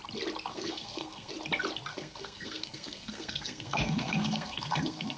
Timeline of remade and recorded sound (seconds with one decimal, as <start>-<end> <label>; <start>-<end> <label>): 0.0-0.5 recorded; 0.5-1.3 remade; 1.3-1.9 recorded; 1.9-5.2 remade